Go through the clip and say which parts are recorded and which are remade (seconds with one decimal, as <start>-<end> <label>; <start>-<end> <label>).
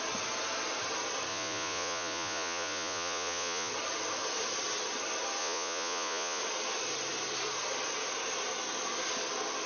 0.0-1.3 recorded; 1.3-3.7 remade; 3.7-5.4 recorded; 5.4-6.4 remade; 6.4-9.7 recorded